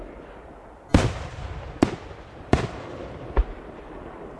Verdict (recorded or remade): remade